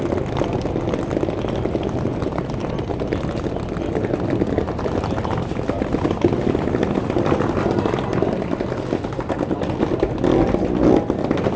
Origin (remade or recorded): recorded